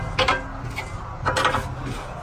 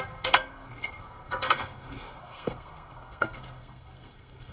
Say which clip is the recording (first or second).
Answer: first